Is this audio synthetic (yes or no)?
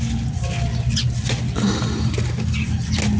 no